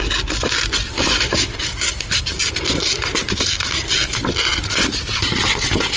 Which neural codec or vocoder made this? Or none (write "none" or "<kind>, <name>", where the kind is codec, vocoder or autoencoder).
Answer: none